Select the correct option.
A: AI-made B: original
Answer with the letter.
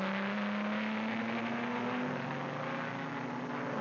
B